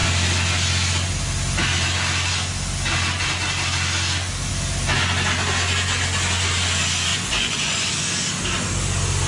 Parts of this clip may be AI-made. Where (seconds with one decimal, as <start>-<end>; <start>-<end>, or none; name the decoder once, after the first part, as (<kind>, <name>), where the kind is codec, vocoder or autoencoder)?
7.1-7.9 (vocoder, Vocos)